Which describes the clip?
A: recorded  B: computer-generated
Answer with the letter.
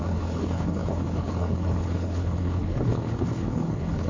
B